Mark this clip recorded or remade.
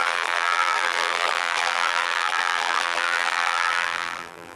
remade